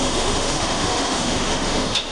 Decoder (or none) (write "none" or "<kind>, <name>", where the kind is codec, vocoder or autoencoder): autoencoder, DAC-VAE